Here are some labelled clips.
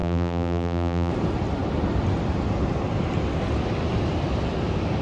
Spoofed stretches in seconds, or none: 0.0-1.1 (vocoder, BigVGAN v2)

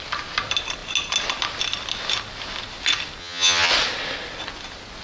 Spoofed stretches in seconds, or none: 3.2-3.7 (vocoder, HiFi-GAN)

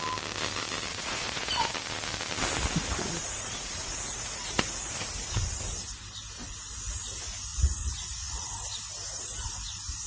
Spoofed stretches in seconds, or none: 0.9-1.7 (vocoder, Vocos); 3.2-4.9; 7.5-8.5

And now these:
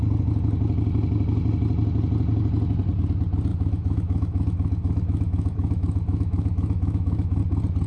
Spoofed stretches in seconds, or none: 3.5-7.4 (autoencoder, DAC-VAE)

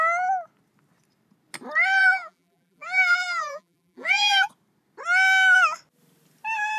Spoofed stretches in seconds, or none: 2.0-4.5 (vocoder, BigVGAN v2)